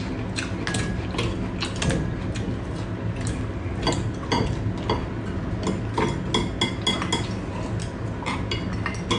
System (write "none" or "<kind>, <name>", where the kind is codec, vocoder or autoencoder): none